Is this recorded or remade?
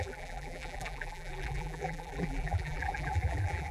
remade